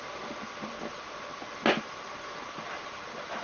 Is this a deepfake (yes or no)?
no